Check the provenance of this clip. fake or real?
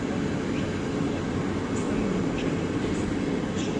real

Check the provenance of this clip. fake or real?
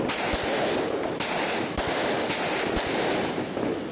real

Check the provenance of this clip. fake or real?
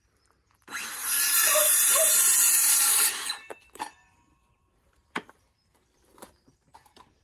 fake